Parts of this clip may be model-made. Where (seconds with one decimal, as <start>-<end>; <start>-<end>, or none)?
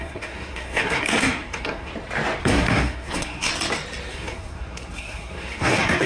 0.0-1.9; 2.4-3.5; 4.1-6.1